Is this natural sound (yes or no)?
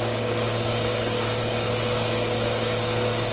no